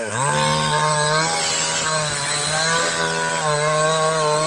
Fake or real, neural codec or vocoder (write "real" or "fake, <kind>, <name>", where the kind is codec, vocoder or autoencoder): real